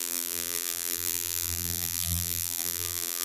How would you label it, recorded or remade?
remade